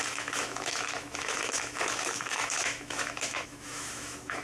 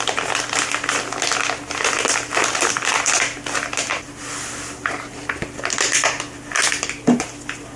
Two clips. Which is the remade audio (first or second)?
first